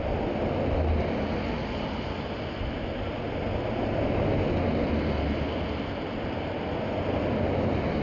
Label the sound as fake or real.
real